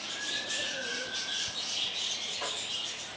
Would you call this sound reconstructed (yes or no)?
no